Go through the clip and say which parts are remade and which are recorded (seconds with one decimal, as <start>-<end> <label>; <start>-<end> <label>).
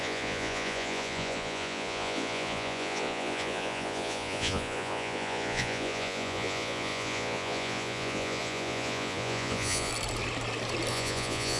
0.0-9.9 remade; 9.9-10.9 recorded; 10.9-11.6 remade